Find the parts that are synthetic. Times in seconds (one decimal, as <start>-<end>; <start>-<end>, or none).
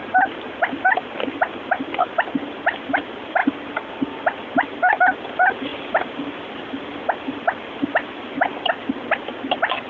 0.0-1.7; 3.4-5.0; 5.7-8.7